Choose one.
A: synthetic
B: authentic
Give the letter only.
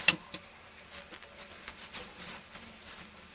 B